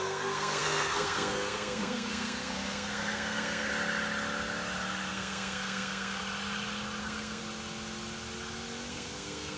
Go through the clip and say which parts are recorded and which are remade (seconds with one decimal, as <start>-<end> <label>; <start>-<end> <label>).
0.0-3.7 remade; 3.7-5.1 recorded; 5.1-6.2 remade; 6.2-7.0 recorded; 7.0-7.4 remade; 7.4-8.9 recorded; 8.9-9.6 remade